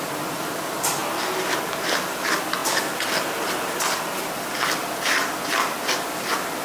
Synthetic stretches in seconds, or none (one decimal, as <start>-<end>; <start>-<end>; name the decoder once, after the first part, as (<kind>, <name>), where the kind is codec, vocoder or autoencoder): none